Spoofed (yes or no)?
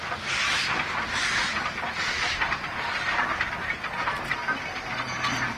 no